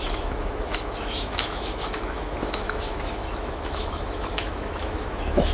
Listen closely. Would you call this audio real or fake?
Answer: fake